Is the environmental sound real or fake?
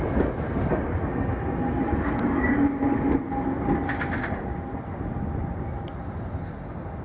real